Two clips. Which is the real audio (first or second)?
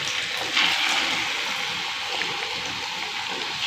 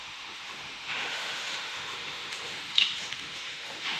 first